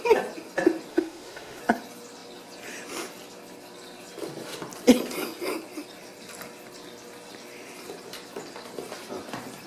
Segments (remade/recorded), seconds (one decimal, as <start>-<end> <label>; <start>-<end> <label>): 0.0-0.9 recorded; 0.9-1.6 remade; 1.6-9.7 recorded